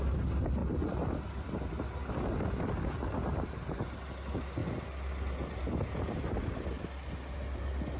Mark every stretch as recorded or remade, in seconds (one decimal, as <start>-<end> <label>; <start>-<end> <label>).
0.0-8.0 recorded